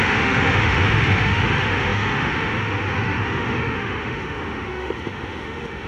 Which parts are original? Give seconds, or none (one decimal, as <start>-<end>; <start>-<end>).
none